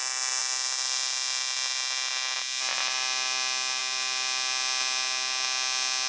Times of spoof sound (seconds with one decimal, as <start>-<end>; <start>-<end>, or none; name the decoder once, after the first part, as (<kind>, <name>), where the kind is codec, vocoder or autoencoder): none